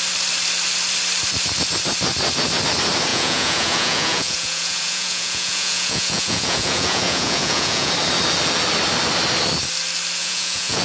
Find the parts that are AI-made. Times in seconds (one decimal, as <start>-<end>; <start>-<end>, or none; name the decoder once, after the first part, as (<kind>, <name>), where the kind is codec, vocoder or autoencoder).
3.1-7.9 (vocoder, Vocos); 10.2-10.8